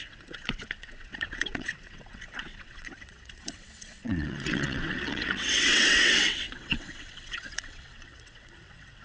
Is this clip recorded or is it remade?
remade